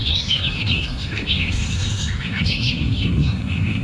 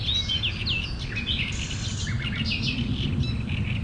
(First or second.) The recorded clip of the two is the second